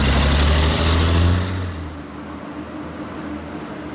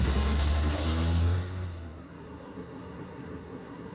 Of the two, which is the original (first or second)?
first